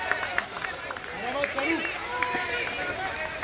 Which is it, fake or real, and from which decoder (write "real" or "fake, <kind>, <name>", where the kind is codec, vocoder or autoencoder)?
real